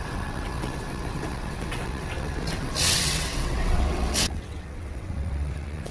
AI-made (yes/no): yes